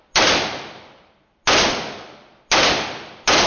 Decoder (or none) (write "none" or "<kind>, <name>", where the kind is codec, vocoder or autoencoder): none